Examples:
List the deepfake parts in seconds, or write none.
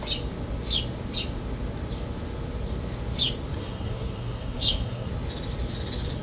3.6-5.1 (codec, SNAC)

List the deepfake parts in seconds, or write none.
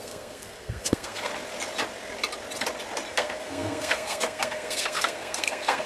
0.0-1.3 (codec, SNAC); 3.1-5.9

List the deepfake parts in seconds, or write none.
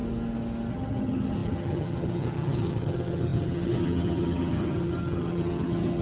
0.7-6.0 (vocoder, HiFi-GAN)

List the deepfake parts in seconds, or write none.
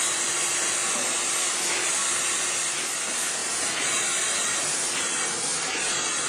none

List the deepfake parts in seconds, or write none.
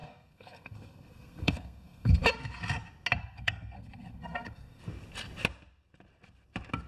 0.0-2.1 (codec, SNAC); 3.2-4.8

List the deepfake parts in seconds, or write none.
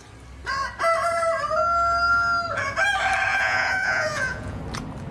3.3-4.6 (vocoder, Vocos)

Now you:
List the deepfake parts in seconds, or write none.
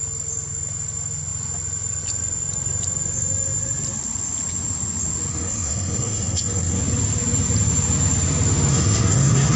5.3-6.8 (codec, SNAC); 8.7-9.6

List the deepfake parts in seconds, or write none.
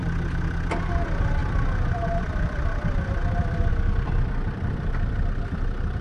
0.9-3.2 (vocoder, BigVGAN v2); 3.7-6.0